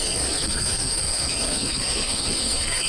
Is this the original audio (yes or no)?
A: no